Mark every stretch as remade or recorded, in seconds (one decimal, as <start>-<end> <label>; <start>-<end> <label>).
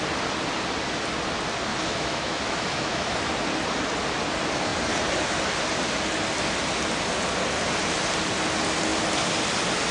0.0-1.7 recorded; 1.7-3.2 remade; 3.2-9.9 recorded